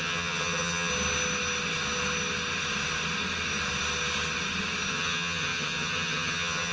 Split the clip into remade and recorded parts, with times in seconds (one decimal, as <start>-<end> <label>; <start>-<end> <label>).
0.0-0.9 remade; 0.9-4.9 recorded; 4.9-6.7 remade